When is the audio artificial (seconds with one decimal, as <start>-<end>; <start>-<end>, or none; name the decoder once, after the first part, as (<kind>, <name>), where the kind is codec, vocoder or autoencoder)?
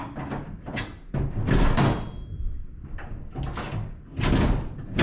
none